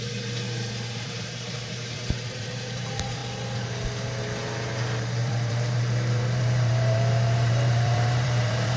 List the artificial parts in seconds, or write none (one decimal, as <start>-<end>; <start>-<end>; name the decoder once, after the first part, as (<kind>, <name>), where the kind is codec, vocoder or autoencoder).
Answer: 0.0-3.2 (vocoder, BigVGAN v2); 5.0-8.8

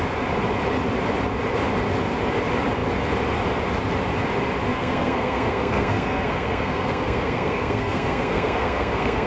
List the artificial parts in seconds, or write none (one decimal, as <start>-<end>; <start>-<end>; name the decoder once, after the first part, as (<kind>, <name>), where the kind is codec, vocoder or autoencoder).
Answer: 4.7-9.3 (codec, SNAC)

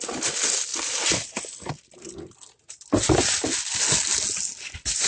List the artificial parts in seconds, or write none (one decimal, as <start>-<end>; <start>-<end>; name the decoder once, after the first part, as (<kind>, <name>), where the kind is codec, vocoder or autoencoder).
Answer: none

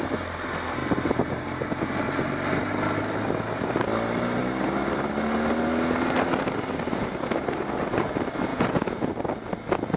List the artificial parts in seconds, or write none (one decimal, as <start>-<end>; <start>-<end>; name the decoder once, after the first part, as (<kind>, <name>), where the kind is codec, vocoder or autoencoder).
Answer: 8.5-9.1 (vocoder, Vocos)

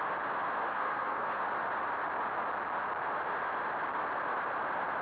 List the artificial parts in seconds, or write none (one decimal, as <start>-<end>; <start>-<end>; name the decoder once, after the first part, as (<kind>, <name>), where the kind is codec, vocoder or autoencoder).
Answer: 0.7-1.4 (codec, SNAC)